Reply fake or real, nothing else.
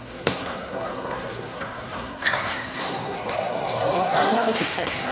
fake